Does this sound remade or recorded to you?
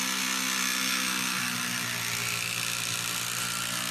recorded